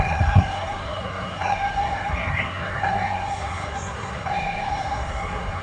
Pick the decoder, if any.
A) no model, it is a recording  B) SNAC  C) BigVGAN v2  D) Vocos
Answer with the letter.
B